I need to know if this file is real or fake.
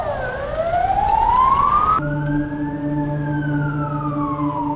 real